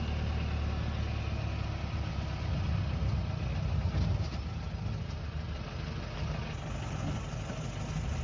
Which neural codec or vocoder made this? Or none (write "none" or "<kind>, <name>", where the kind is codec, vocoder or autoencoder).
none